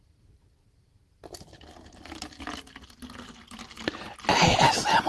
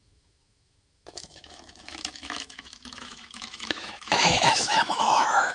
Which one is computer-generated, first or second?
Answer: second